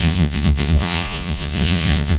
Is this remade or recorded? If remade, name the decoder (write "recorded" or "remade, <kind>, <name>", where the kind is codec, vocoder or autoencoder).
remade, vocoder, Vocos